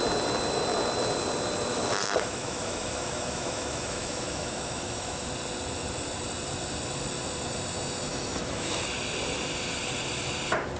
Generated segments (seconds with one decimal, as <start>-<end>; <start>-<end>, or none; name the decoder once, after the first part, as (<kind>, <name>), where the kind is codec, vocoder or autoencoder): 1.7-5.3 (autoencoder, DAC-VAE); 8.1-8.8

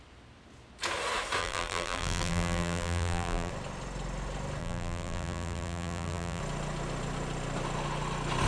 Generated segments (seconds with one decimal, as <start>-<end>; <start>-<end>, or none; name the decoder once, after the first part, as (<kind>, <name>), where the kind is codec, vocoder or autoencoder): 1.4-3.5 (vocoder, BigVGAN v2); 4.6-6.4

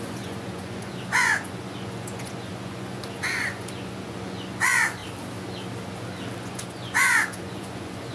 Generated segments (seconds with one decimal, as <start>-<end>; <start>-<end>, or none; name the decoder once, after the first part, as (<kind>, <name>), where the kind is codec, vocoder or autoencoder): 0.0-5.0 (vocoder, Vocos); 6.4-8.1

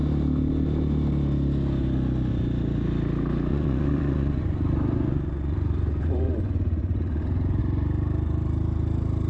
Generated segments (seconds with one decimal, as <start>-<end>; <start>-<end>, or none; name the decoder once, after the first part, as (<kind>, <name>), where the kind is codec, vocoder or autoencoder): 3.5-7.6 (vocoder, Vocos)

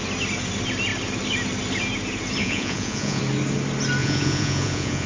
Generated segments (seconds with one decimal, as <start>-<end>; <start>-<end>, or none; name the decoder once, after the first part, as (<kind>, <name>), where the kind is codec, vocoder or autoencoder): 2.4-3.2 (vocoder, Vocos); 4.0-5.1

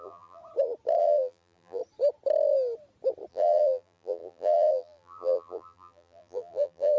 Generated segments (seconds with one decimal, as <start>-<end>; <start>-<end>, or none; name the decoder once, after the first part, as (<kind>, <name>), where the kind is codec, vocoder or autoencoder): 0.0-0.4 (vocoder, BigVGAN v2); 1.0-1.8; 3.3-7.0